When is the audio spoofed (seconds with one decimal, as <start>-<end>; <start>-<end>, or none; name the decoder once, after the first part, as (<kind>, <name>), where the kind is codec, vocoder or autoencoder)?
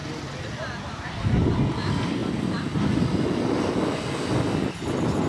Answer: none